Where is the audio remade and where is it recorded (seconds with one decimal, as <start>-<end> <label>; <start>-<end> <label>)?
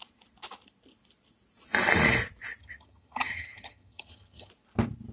0.0-2.6 recorded; 2.6-4.5 remade; 4.5-5.1 recorded